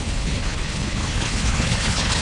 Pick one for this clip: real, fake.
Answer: fake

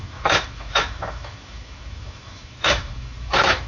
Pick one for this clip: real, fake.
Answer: fake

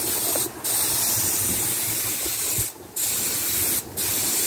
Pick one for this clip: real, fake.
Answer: real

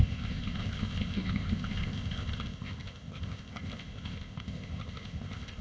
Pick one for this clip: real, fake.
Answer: fake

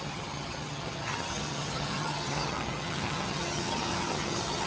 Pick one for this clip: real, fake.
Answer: fake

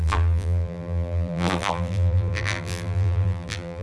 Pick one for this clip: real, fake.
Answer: fake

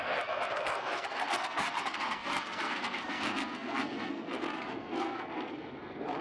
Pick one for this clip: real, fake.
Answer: fake